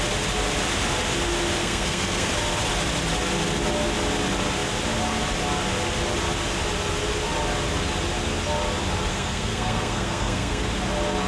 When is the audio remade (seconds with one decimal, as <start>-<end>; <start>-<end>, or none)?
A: 1.6-2.3; 9.1-10.7